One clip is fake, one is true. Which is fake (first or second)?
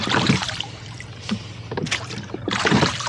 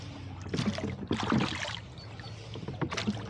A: first